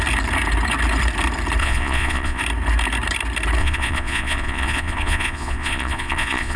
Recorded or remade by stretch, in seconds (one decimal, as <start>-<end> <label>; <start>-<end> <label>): 0.0-1.6 recorded; 1.6-2.4 remade; 2.4-3.6 recorded; 3.6-6.6 remade